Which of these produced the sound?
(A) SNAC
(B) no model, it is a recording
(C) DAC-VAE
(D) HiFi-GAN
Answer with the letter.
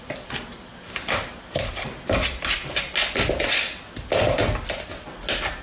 B